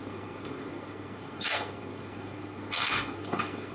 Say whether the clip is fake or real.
fake